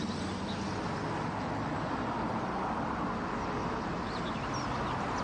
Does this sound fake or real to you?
real